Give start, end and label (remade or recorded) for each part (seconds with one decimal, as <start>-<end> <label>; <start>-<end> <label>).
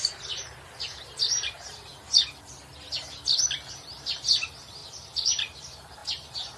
0.0-1.9 remade; 1.9-3.9 recorded; 3.9-4.8 remade; 4.8-5.6 recorded; 5.6-6.6 remade